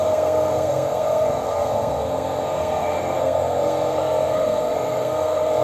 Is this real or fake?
fake